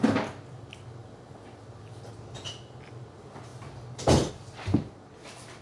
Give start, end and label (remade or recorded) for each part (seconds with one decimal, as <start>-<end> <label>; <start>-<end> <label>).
0.0-5.6 recorded